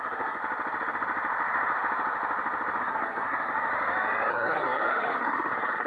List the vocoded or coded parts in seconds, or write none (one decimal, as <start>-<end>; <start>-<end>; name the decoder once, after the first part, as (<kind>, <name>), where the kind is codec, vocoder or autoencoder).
0.0-0.4 (codec, SNAC); 2.8-3.5; 4.3-5.9